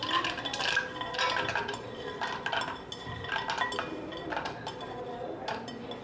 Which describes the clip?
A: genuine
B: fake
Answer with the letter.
A